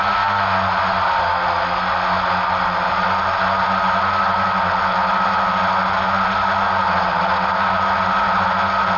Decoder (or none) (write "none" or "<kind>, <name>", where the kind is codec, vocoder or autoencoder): none